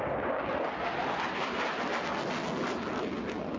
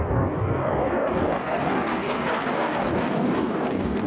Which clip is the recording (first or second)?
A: first